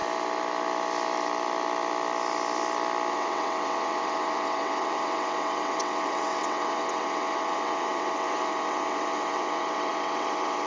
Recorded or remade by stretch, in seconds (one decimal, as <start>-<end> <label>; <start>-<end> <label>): 0.0-3.1 recorded; 3.1-10.7 remade